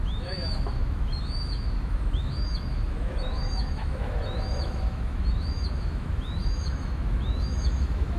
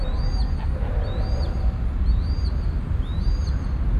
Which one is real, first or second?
second